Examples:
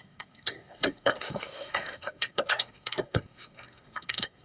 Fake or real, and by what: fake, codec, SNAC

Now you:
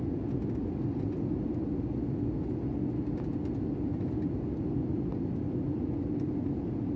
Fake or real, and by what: real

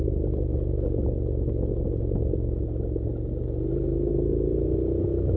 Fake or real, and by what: real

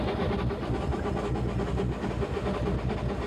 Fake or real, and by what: real